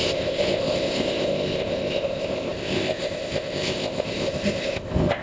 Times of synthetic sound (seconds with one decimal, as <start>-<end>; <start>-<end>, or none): 0.0-5.2